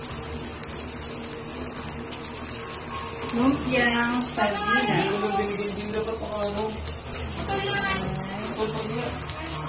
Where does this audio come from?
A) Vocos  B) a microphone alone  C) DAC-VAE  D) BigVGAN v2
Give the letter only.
B